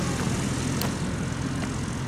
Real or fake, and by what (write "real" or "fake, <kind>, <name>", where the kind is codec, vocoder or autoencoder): real